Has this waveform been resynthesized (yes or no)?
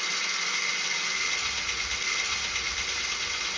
no